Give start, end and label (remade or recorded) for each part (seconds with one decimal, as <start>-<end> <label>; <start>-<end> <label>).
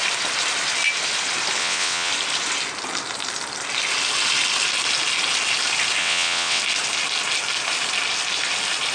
0.0-1.6 recorded; 1.6-2.1 remade; 2.1-6.0 recorded; 6.0-6.6 remade; 6.6-8.9 recorded